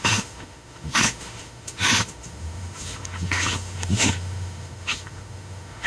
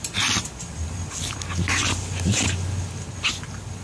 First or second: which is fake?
first